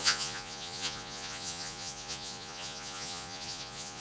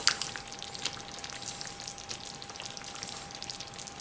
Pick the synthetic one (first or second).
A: first